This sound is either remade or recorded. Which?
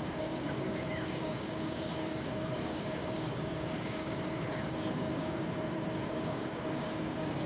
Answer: remade